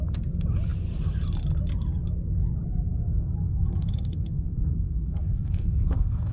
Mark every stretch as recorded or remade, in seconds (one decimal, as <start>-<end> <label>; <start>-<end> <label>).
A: 0.0-2.9 recorded; 2.9-6.3 remade